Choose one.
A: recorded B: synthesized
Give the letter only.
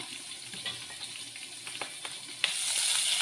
A